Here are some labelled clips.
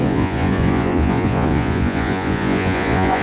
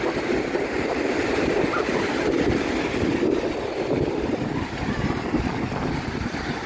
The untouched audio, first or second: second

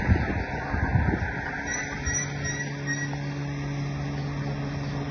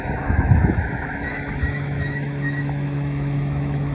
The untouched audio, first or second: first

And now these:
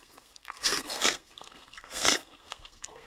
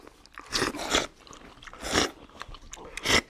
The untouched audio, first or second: second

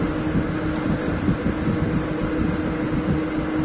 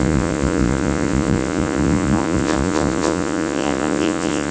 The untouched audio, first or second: first